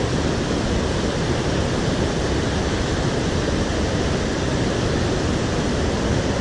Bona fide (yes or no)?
yes